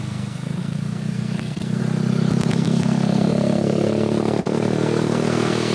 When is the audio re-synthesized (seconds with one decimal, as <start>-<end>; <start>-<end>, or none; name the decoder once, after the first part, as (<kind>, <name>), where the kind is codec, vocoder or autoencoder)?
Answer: 0.0-1.8 (codec, SNAC); 2.5-5.7